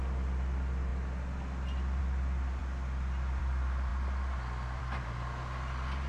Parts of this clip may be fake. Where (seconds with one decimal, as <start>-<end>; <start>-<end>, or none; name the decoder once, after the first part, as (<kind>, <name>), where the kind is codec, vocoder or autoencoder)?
none

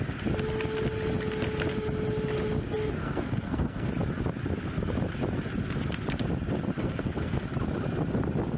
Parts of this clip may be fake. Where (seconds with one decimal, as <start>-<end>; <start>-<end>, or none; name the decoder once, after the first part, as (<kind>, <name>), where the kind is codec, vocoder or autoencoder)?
3.0-3.9 (codec, SNAC); 6.8-7.4

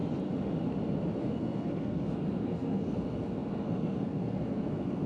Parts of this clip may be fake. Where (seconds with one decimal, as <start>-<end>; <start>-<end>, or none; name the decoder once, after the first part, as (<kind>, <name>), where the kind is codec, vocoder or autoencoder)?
1.2-5.1 (codec, SNAC)